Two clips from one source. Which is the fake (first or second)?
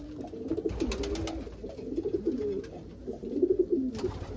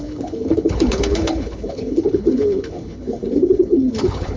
second